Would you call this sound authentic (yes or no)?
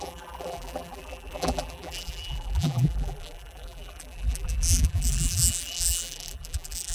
no